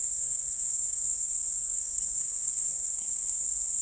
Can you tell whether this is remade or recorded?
remade